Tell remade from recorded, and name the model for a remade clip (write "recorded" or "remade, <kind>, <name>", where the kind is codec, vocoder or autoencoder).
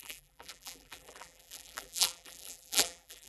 remade, vocoder, BigVGAN v2